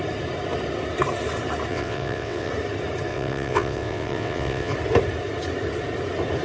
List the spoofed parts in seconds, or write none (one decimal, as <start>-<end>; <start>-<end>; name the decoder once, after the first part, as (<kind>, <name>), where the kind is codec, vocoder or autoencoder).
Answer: 1.7-2.5 (vocoder, WaveNeXt); 3.1-4.7